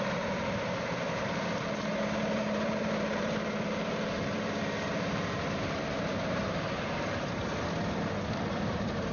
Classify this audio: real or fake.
fake